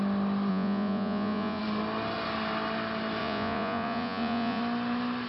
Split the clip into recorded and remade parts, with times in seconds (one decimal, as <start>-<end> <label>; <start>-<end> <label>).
0.0-0.5 recorded; 0.5-1.6 remade; 1.6-3.2 recorded; 3.2-4.6 remade; 4.6-5.3 recorded